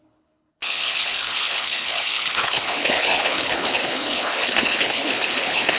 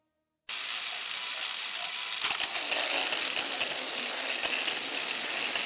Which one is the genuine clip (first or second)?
second